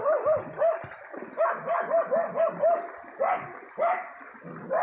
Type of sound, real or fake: real